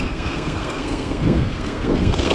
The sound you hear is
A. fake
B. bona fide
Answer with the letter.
A